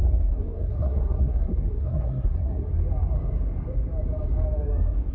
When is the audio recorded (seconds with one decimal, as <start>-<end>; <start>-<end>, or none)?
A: 2.7-5.1